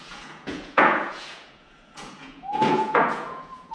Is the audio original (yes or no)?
no